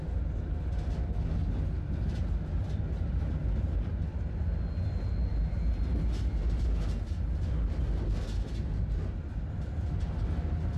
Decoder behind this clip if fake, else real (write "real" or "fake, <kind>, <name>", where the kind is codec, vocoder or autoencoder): real